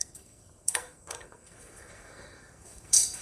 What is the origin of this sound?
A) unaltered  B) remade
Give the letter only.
B